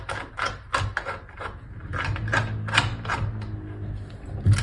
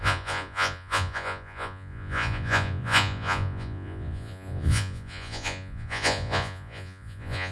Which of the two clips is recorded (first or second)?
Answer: first